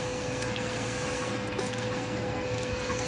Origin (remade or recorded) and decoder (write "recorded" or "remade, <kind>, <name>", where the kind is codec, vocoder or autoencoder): remade, codec, SNAC